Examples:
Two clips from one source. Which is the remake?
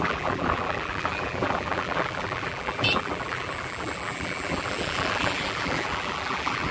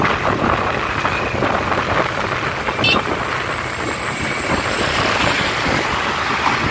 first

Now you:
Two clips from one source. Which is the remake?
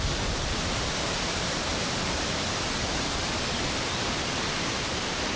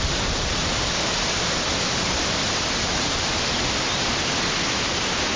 first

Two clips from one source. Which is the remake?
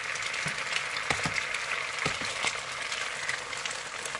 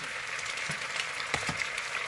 second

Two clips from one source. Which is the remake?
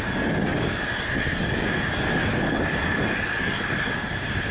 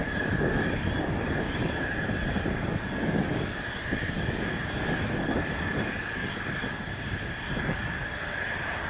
second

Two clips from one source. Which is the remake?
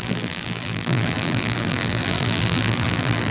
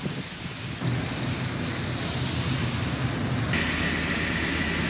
first